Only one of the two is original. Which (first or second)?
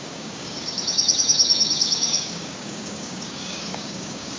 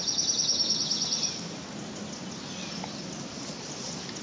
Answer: second